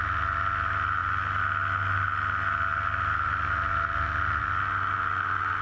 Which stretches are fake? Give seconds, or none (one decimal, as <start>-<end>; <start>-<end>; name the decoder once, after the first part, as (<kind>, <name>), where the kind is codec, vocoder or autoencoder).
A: none